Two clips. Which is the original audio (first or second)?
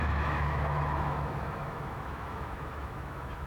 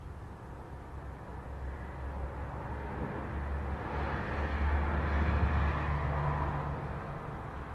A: second